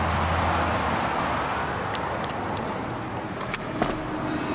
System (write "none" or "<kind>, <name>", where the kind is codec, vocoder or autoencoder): none